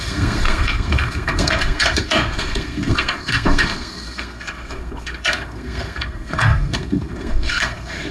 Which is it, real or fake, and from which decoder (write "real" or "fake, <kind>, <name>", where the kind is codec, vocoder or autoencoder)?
fake, codec, SNAC